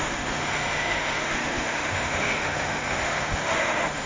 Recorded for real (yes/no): no